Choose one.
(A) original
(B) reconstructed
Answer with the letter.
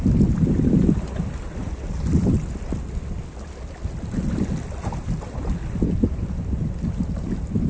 A